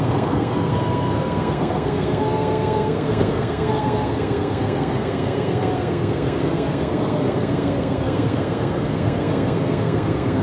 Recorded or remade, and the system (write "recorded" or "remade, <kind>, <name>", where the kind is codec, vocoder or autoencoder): remade, codec, SNAC